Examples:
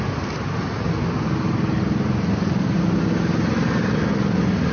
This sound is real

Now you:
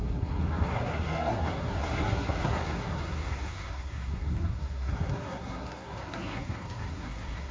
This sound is fake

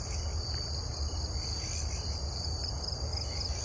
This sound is real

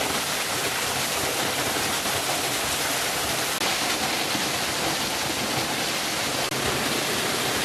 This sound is real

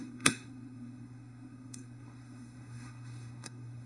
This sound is fake